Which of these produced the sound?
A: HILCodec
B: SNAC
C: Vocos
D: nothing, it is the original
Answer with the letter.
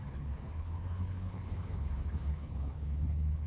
A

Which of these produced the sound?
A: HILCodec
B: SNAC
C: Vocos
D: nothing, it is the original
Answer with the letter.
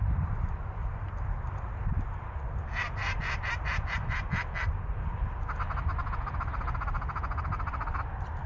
D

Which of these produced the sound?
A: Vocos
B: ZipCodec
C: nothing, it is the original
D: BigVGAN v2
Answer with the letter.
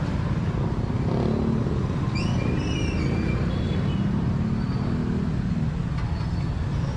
C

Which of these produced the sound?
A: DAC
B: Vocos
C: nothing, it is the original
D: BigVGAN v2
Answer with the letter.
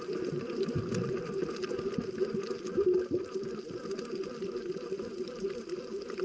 C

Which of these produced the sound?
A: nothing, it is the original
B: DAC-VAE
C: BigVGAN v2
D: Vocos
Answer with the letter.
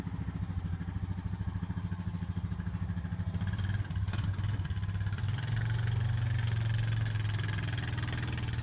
A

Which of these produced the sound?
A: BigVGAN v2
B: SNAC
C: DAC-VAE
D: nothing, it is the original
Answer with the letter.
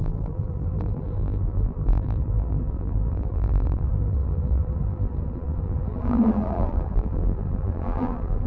A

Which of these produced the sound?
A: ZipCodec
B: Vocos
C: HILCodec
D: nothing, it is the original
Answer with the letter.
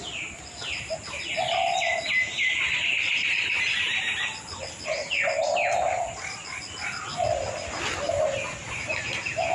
D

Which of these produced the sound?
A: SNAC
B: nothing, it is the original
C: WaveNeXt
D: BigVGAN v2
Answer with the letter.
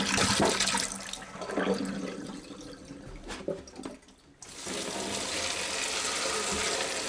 B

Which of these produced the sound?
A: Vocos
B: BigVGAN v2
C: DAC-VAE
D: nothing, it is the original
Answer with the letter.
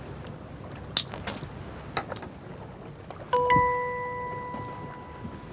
D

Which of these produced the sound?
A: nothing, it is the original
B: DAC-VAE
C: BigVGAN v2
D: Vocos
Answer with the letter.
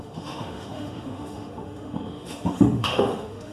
B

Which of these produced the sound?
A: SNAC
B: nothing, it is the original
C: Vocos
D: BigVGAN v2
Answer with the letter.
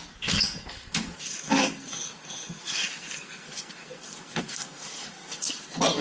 A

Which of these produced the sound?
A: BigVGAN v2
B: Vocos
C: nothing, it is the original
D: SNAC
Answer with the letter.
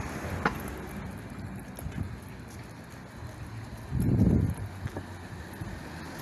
C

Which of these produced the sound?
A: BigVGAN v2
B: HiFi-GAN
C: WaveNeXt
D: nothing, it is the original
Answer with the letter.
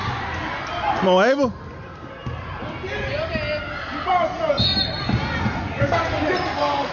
D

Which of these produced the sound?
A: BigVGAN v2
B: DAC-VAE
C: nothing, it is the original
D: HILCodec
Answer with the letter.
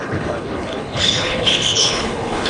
D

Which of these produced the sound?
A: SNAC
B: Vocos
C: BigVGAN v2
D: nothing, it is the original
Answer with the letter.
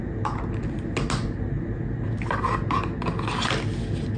D